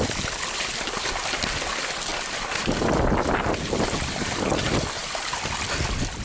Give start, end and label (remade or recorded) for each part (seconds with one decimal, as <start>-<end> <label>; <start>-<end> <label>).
0.0-2.1 recorded; 2.1-4.2 remade; 4.2-5.0 recorded; 5.0-6.2 remade